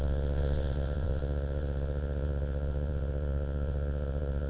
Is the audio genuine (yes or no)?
no